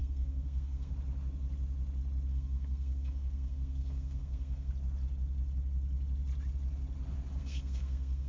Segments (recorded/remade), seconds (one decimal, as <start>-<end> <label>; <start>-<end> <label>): 0.0-0.9 remade; 0.9-2.3 recorded; 2.3-4.7 remade; 4.7-7.4 recorded; 7.4-8.3 remade